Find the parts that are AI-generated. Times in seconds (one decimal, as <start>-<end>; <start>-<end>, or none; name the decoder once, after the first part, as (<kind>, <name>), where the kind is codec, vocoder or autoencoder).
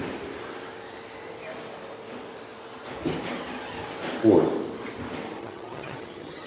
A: 5.4-6.5 (vocoder, HiFi-GAN)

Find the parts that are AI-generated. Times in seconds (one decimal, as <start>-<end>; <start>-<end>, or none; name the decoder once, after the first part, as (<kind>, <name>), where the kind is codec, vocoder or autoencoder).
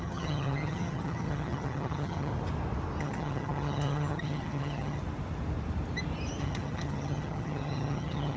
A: 0.0-2.3 (vocoder, HiFi-GAN); 3.0-5.0; 6.4-8.4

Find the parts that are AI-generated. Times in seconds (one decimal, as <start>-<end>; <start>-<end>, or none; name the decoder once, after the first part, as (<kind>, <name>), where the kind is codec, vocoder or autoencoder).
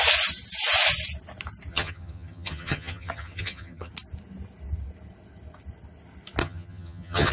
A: 1.7-3.9 (vocoder, HiFi-GAN); 6.4-7.3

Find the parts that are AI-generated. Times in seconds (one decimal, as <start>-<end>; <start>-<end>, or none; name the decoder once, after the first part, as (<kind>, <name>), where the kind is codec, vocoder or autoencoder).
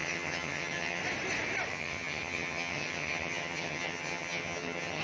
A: 0.0-1.0 (vocoder, HiFi-GAN); 1.7-5.0